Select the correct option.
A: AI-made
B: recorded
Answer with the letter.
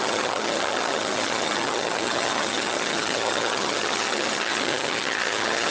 A